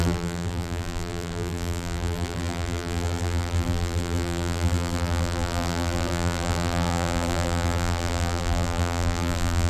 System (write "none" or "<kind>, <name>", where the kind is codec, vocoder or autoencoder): vocoder, BigVGAN v2